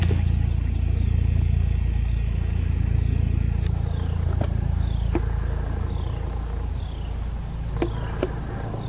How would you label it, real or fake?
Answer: real